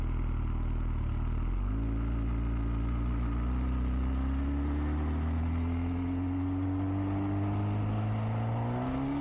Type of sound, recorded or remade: recorded